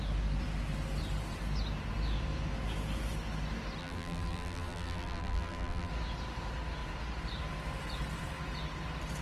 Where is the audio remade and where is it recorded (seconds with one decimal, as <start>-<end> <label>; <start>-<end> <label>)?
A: 0.0-3.8 recorded; 3.8-5.9 remade; 5.9-9.2 recorded

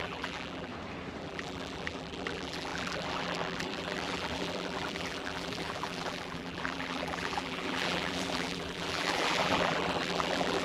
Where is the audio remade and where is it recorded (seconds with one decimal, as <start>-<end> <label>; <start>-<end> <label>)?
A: 0.0-0.7 remade; 0.7-1.2 recorded; 1.2-10.6 remade

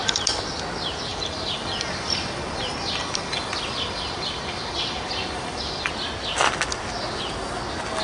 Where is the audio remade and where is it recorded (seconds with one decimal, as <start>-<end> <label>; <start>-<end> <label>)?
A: 0.0-1.1 recorded; 1.1-5.9 remade; 5.9-8.0 recorded

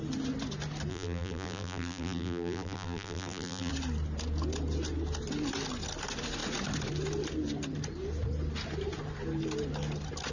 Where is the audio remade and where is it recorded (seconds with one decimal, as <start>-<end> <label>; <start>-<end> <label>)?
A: 0.0-0.9 recorded; 0.9-3.7 remade; 3.7-10.3 recorded

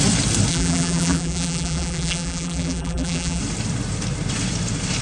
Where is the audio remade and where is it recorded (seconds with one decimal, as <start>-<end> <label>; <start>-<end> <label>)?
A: 0.0-0.5 recorded; 0.5-3.4 remade; 3.4-5.0 recorded

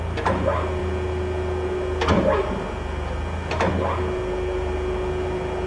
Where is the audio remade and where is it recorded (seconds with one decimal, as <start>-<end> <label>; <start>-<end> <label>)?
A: 0.0-5.7 recorded

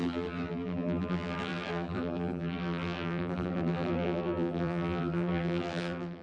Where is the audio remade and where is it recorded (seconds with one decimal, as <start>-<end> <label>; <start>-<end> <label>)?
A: 0.0-6.2 remade